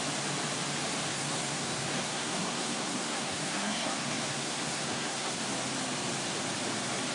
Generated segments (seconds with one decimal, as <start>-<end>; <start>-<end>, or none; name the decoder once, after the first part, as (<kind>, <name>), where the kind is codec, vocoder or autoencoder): 1.1-5.4 (codec, SNAC)